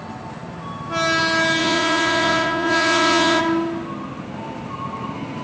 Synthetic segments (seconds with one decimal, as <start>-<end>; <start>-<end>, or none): 1.6-3.4